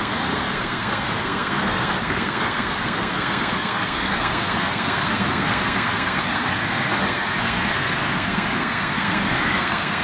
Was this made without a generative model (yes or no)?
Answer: no